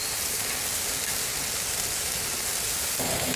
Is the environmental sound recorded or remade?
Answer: recorded